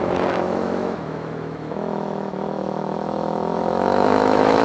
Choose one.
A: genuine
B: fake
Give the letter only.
B